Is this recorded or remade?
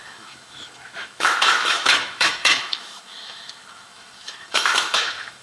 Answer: remade